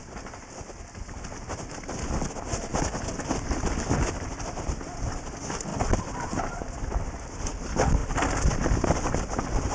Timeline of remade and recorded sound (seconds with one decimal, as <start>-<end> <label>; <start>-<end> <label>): 0.0-9.7 recorded